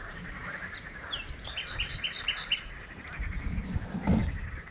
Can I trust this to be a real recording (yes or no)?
yes